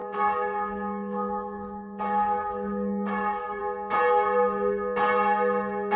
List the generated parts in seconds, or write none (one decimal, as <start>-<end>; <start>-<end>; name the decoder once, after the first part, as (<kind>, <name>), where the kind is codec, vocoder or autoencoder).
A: 0.0-3.6 (codec, DAC)